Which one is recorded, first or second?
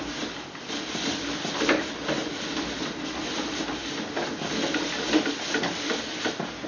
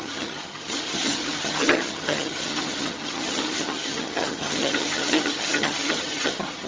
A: first